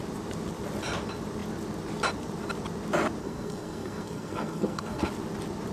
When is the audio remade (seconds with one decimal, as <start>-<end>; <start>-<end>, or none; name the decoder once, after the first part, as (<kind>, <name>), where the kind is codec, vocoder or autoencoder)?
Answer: 3.2-5.1 (codec, SNAC)

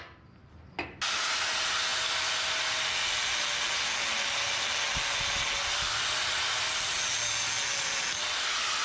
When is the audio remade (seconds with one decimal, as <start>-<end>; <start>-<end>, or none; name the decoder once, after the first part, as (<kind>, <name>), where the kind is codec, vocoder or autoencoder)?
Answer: none